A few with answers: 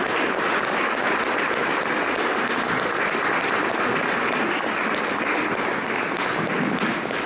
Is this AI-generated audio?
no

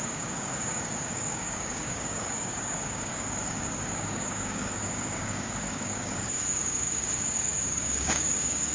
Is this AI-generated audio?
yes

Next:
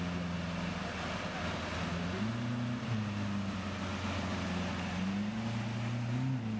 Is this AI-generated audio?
no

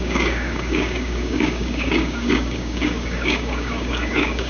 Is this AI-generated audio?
yes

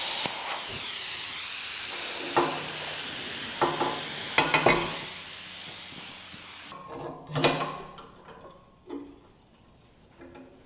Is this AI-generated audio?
no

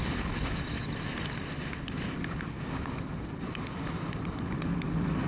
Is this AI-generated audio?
no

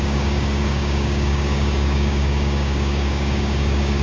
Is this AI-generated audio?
yes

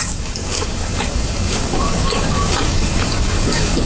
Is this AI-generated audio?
yes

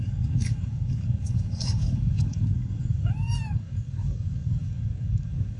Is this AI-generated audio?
yes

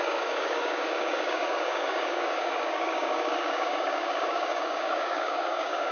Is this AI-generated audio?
yes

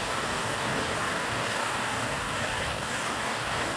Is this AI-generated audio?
yes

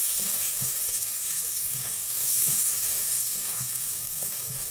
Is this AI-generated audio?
yes